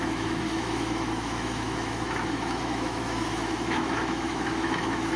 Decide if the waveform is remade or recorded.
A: remade